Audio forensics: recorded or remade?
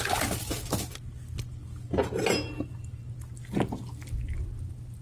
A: recorded